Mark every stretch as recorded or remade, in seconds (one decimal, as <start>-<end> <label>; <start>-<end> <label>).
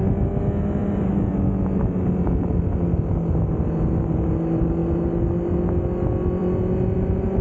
0.0-7.4 recorded